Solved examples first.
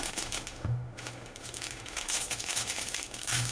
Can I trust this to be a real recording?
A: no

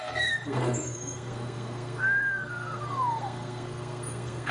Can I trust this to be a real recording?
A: no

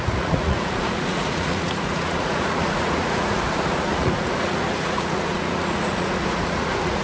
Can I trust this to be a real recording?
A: no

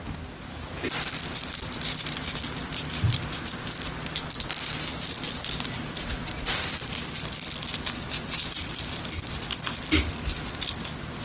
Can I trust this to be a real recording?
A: yes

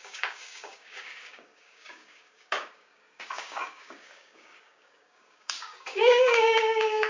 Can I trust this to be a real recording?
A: no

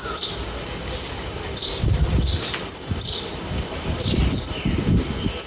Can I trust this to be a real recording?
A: yes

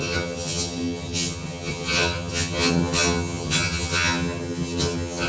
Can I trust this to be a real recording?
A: no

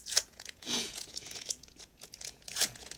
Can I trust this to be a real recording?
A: no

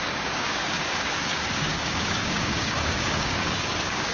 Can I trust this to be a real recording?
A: no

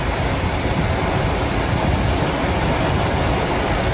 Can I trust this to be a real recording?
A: yes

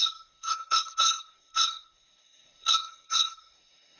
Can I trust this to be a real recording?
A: no